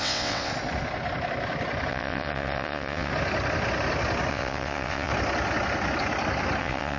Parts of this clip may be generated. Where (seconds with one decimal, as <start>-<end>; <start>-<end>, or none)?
0.0-0.5; 1.9-3.1; 4.3-5.1; 6.6-7.0